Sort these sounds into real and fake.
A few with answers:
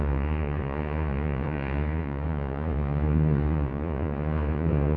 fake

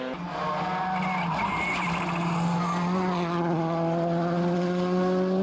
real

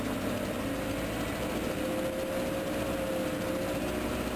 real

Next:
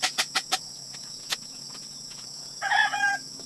fake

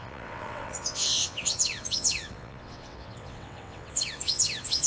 fake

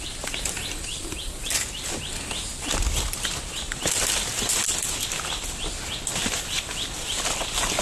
real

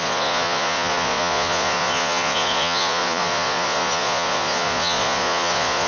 fake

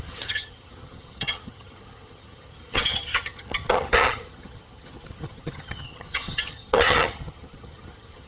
fake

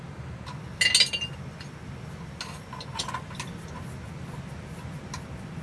real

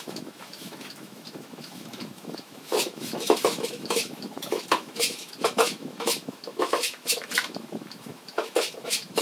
fake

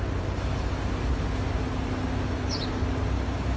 real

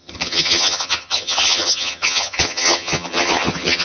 fake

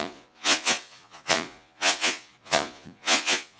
fake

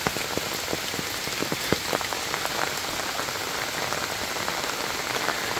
real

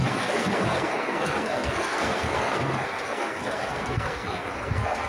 fake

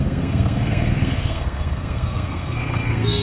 fake